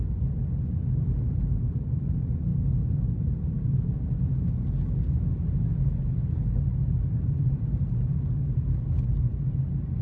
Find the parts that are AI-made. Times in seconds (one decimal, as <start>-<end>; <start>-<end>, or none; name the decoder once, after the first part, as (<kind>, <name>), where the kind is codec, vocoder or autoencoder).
none

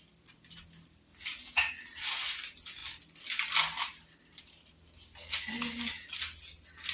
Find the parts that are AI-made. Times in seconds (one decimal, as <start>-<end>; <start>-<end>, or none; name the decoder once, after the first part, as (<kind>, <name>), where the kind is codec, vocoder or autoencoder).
none

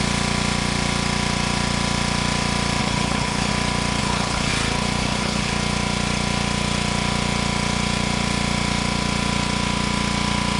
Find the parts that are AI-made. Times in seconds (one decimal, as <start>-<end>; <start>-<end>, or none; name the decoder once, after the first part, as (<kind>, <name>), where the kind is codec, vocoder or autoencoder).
2.8-3.5 (codec, HILCodec); 4.0-4.5; 5.0-5.5

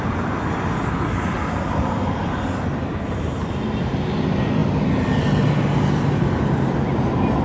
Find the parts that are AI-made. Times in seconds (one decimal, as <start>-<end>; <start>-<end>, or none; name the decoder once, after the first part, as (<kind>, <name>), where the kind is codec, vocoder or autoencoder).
none

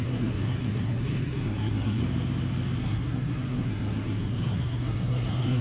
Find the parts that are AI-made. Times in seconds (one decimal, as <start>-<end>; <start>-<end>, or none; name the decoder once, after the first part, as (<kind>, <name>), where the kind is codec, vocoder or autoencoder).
0.0-2.0 (codec, SNAC); 2.8-5.6

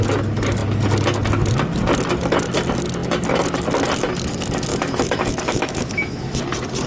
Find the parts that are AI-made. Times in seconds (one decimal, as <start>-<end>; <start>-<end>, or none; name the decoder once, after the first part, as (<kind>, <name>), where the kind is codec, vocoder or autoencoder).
4.7-6.4 (autoencoder, DAC-VAE)

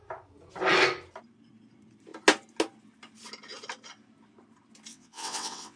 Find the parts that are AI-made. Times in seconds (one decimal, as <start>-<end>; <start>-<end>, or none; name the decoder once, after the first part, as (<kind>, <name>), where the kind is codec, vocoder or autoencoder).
4.9-5.8 (vocoder, WaveNeXt)